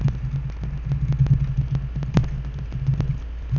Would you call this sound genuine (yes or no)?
yes